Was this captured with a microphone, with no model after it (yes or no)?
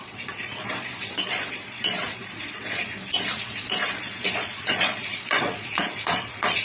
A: no